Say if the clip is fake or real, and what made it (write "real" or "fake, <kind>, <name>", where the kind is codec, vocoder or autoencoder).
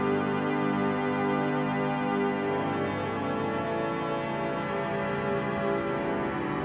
real